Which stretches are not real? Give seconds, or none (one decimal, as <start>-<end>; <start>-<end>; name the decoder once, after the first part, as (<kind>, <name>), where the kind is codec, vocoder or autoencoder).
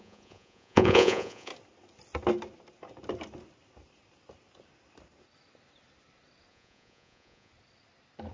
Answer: 0.0-1.5 (vocoder, Vocos); 6.5-7.5